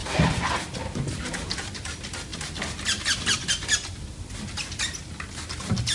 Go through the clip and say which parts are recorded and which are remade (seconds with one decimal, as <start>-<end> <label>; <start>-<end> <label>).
0.0-5.9 recorded